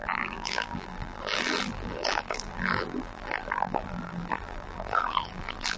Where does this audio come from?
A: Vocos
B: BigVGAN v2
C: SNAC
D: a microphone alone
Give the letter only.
B